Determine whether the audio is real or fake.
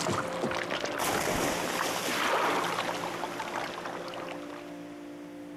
real